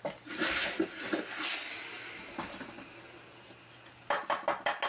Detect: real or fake real